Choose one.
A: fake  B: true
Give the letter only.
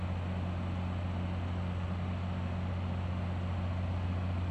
B